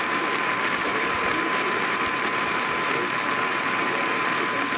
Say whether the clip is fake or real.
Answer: fake